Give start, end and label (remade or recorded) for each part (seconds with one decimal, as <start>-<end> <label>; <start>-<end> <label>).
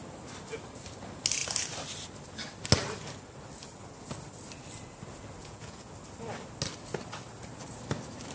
0.0-5.4 recorded; 5.4-5.9 remade; 5.9-8.3 recorded